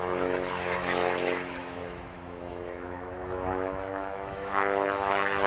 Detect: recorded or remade remade